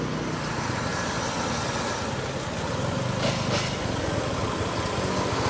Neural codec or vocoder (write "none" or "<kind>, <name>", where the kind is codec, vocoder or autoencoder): none